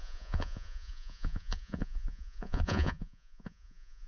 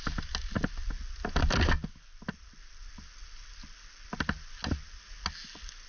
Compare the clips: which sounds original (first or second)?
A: second